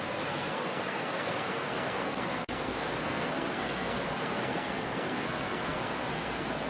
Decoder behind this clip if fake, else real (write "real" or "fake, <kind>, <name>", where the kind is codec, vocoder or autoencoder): fake, codec, SNAC